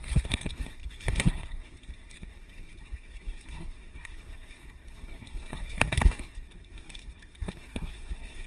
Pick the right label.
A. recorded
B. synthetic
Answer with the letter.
B